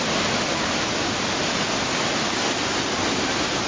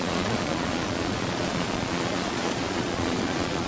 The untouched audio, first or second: first